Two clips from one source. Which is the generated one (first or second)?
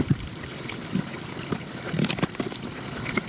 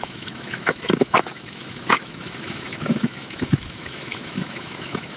second